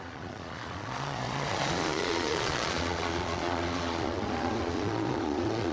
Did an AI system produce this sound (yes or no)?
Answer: yes